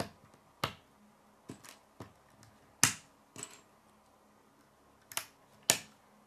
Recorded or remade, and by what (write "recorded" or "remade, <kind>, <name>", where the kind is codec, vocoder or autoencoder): recorded